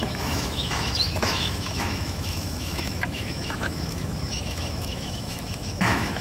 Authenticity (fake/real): fake